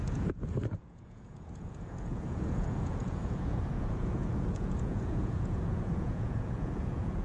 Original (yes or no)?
no